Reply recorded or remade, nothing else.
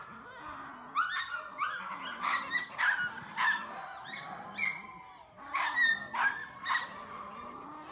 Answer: recorded